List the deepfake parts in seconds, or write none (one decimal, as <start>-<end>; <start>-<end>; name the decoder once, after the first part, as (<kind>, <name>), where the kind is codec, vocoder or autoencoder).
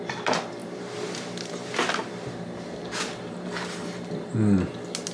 0.6-3.7 (vocoder, BigVGAN v2)